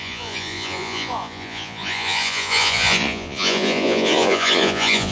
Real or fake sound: fake